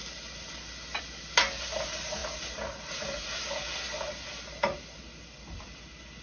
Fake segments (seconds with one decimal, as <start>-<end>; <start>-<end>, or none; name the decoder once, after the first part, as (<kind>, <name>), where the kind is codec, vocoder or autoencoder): none